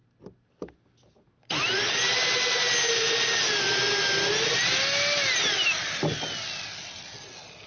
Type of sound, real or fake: real